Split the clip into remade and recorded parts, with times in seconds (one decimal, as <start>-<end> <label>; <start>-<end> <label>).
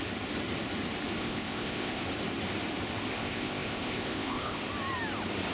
0.0-1.2 recorded; 1.2-2.0 remade; 2.0-3.1 recorded; 3.1-4.6 remade; 4.6-5.5 recorded